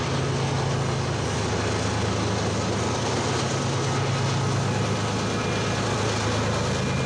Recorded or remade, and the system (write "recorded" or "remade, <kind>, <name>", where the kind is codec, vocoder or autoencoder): recorded